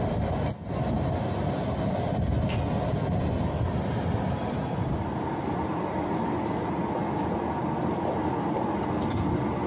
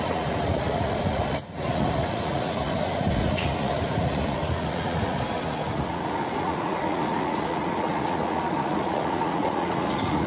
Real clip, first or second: first